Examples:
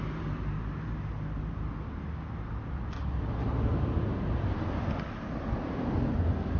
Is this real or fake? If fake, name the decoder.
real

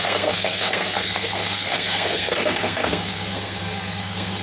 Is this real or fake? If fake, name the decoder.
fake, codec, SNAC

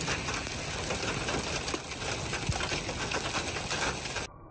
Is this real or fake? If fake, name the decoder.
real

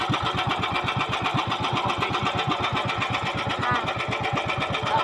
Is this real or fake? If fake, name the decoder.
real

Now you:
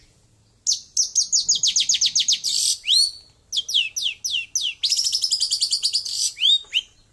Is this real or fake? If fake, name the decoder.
real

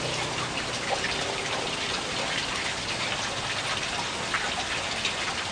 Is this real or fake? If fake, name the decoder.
real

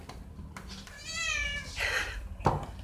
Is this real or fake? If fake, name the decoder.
real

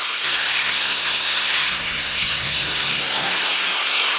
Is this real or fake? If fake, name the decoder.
fake, codec, SNAC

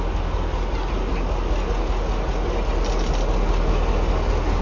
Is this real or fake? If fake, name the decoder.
real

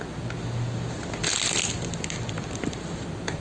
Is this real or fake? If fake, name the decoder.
real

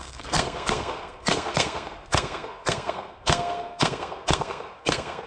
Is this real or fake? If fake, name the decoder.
fake, codec, SNAC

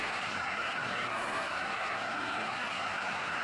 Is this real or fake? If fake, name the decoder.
fake, codec, SNAC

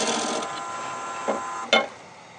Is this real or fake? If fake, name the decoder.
real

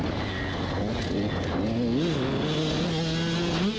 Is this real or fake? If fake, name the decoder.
real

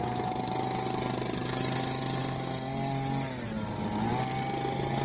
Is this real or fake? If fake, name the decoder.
real